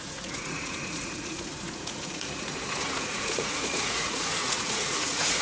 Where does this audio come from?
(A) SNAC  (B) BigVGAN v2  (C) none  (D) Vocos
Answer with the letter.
D